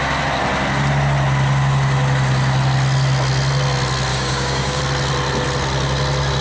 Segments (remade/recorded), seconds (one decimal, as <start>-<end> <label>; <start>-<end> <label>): 0.0-4.1 recorded; 4.1-4.8 remade; 4.8-6.4 recorded